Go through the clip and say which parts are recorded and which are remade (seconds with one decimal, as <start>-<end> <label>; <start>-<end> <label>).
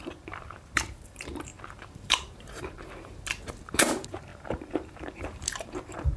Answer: 0.0-3.1 remade; 3.1-3.6 recorded; 3.6-6.2 remade